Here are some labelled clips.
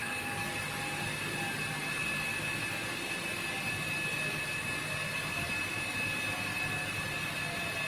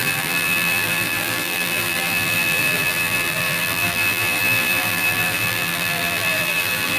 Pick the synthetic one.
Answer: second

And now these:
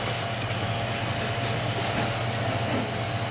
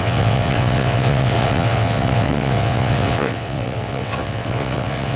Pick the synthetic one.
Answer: second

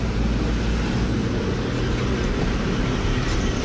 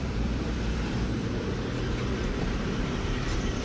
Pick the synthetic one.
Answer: second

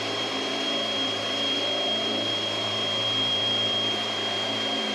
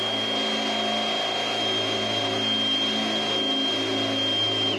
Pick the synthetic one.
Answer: first